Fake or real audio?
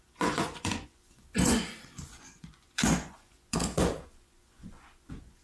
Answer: fake